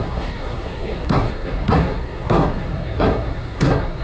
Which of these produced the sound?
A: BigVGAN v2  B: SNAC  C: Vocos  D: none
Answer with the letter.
B